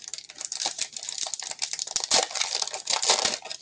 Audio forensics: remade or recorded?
recorded